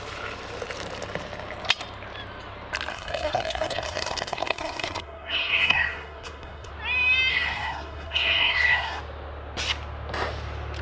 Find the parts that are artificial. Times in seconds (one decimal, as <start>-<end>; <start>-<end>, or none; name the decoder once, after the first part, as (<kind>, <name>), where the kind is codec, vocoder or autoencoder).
2.9-6.7 (codec, SNAC); 7.3-9.0